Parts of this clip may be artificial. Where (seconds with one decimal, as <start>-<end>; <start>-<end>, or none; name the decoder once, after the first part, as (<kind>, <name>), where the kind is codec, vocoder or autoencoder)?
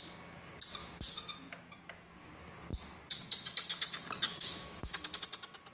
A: 0.8-2.1 (autoencoder, DAC-VAE); 4.3-5.2